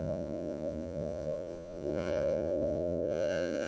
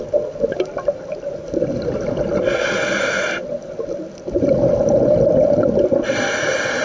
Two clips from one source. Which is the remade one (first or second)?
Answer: first